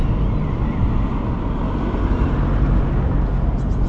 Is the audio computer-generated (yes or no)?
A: no